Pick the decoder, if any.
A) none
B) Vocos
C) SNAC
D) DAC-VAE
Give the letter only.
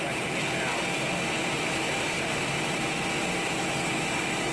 A